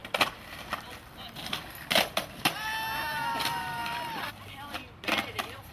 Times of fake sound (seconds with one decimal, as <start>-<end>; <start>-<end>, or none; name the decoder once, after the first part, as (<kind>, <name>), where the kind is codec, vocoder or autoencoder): 0.0-0.6 (vocoder, BigVGAN v2)

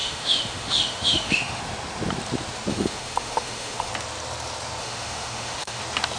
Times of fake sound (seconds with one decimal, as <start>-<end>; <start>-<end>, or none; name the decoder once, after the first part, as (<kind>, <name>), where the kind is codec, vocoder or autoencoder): 0.0-1.6 (autoencoder, DAC-VAE); 2.7-3.9; 4.8-5.8

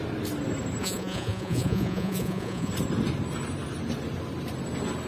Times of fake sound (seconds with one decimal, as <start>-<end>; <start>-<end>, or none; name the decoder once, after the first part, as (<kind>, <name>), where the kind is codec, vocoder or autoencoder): 0.8-2.7 (vocoder, Vocos)

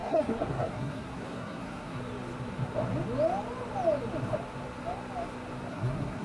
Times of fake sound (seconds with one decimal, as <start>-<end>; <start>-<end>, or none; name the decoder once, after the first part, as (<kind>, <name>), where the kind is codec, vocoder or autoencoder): 0.0-2.0 (codec, SNAC); 5.7-6.2

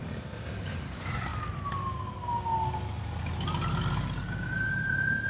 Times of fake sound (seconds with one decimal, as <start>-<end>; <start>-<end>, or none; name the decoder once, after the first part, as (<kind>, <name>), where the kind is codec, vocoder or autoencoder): 0.0-1.3 (vocoder, BigVGAN v2); 4.5-5.3

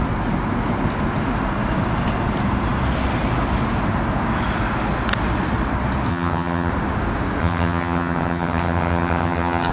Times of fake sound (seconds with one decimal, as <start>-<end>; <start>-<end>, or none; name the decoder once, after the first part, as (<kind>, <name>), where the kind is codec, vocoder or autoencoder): 6.1-6.7 (vocoder, HiFi-GAN); 7.4-9.7